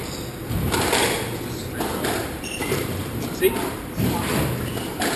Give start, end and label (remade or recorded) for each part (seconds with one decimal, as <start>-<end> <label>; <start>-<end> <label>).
0.0-2.2 recorded; 2.2-4.3 remade; 4.3-5.2 recorded